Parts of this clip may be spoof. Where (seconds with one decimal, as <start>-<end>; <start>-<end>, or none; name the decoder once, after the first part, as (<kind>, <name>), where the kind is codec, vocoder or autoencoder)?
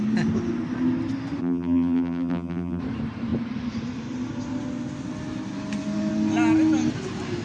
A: 1.4-2.8 (vocoder, BigVGAN v2)